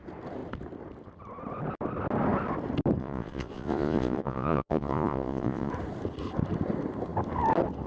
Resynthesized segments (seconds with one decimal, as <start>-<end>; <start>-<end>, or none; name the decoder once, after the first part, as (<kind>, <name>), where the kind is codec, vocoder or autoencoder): 3.0-5.7 (vocoder, Vocos)